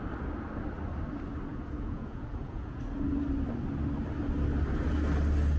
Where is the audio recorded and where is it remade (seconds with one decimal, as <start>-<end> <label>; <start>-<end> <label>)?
0.0-1.5 recorded; 1.5-2.8 remade; 2.8-5.6 recorded